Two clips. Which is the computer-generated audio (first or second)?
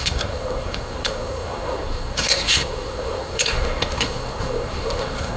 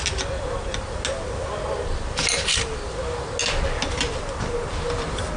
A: first